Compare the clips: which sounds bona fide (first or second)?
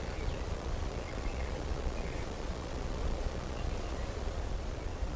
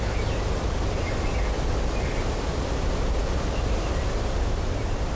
second